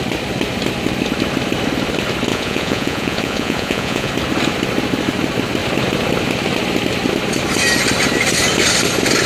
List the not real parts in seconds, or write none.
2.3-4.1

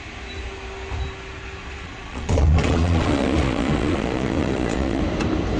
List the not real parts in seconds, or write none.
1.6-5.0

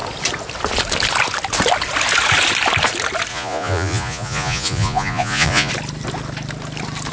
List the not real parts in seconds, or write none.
3.3-5.7